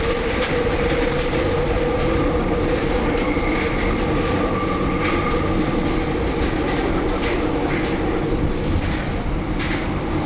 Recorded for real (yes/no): yes